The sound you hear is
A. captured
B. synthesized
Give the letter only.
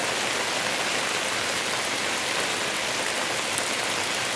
A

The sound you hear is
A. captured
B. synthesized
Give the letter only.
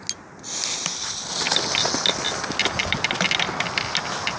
A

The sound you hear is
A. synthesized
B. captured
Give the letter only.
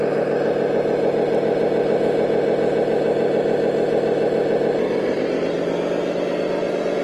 B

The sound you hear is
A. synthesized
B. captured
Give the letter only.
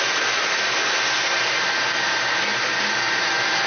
B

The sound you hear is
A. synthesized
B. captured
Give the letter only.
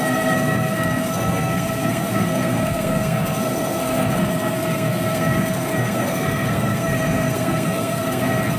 A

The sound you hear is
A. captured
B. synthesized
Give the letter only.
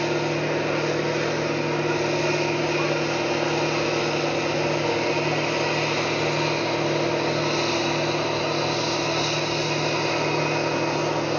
A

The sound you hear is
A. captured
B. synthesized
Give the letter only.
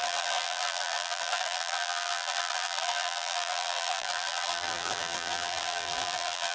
B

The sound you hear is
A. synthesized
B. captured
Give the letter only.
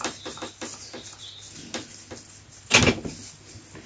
B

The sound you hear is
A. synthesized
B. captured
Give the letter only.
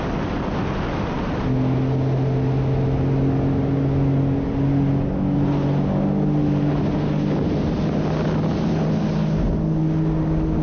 B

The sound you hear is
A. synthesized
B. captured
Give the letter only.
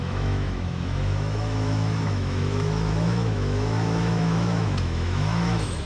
A